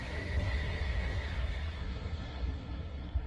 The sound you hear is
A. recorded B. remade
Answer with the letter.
B